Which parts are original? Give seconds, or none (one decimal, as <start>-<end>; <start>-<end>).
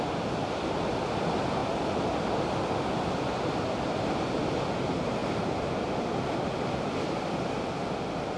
0.0-8.4